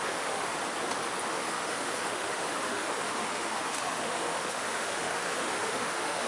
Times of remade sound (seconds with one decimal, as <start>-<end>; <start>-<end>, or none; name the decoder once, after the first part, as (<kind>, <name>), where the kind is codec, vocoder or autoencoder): 0.0-0.6 (autoencoder, DAC-VAE); 1.3-6.3